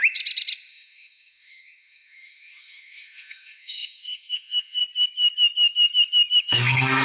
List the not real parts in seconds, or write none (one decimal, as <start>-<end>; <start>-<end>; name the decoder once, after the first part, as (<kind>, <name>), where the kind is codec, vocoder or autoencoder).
0.7-4.8 (autoencoder, DAC-VAE); 6.4-7.0